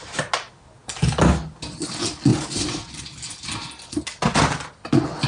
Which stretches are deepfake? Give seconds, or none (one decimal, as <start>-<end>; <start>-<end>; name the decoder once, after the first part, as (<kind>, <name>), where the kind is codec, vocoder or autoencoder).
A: none